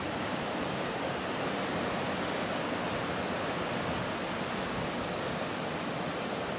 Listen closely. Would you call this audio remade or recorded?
recorded